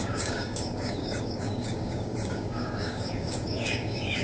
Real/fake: fake